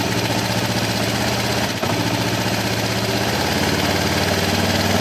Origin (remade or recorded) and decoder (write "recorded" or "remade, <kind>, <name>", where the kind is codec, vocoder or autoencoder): recorded